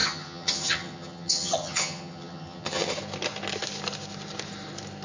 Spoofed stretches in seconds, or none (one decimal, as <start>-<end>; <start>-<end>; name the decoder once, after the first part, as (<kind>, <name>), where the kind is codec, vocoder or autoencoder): 0.0-3.0 (vocoder, HiFi-GAN)